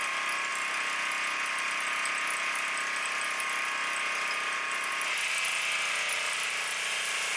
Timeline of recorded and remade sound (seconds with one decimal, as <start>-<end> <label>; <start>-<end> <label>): 0.0-7.4 recorded